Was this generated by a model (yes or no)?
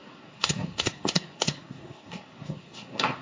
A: yes